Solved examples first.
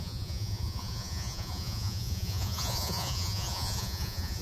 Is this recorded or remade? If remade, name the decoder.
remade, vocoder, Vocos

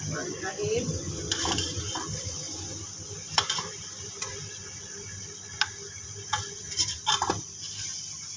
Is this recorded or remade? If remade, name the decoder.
recorded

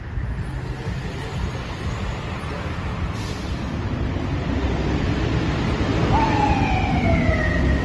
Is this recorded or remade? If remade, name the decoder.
recorded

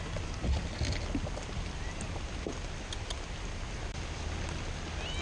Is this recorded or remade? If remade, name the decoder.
recorded